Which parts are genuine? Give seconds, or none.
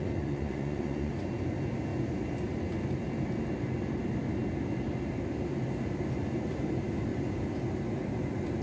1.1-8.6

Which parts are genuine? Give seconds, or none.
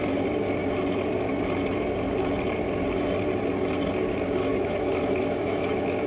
0.0-4.5